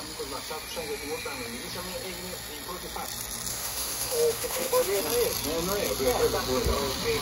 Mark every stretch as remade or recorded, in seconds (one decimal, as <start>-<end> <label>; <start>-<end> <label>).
0.0-3.5 recorded; 3.5-5.0 remade; 5.0-7.2 recorded